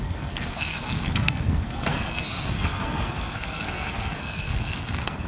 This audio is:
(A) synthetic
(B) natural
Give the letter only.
A